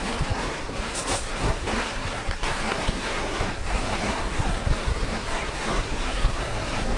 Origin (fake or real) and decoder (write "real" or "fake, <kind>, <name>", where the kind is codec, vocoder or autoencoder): fake, codec, SNAC